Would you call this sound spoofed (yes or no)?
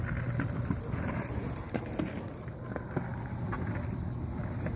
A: no